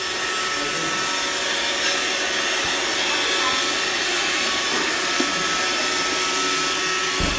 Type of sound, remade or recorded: recorded